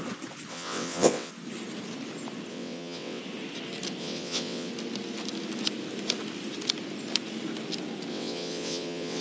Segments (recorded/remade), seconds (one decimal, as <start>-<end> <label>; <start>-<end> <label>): 0.0-0.5 recorded; 0.5-1.3 remade; 1.3-2.5 recorded; 2.5-3.2 remade; 3.2-4.0 recorded; 4.0-4.7 remade; 4.7-8.1 recorded; 8.1-9.2 remade